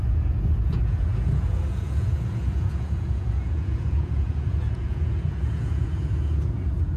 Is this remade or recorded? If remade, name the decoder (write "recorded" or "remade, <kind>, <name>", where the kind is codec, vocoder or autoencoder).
remade, vocoder, Vocos